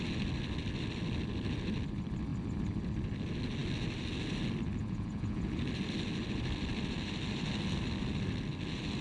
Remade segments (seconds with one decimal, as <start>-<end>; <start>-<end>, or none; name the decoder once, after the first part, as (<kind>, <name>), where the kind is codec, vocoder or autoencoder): 4.8-5.6 (vocoder, Vocos)